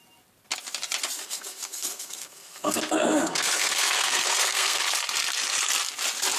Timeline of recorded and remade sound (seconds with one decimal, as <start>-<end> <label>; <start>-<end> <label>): 0.0-1.2 recorded; 1.2-4.8 remade; 4.8-6.4 recorded